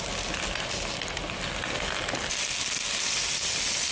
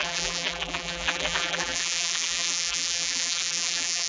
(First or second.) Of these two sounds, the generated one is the second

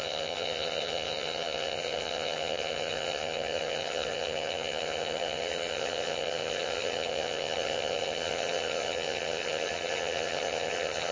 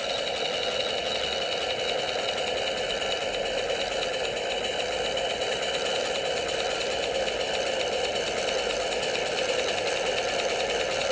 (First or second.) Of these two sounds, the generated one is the first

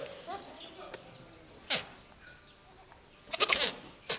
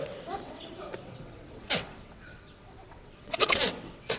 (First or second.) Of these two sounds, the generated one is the second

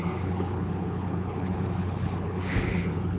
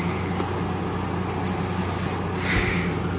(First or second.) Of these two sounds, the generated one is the first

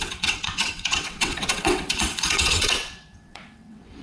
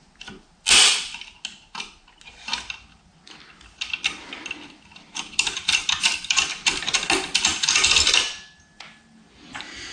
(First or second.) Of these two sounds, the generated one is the first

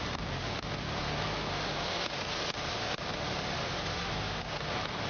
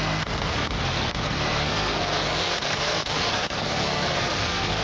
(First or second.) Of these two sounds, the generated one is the second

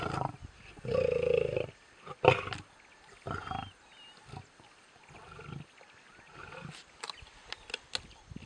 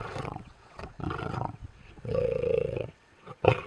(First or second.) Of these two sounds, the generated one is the second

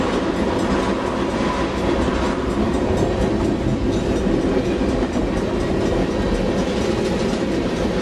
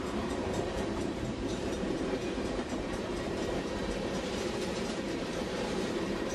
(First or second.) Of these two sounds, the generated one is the second